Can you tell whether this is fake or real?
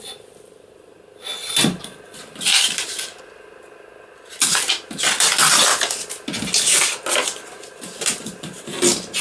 real